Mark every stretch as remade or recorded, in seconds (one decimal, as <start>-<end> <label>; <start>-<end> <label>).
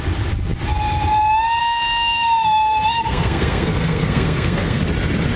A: 0.0-1.6 recorded; 1.6-4.8 remade; 4.8-5.4 recorded